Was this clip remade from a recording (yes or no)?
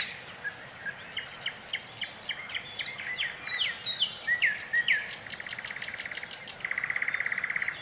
no